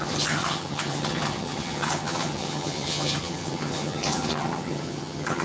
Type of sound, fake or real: fake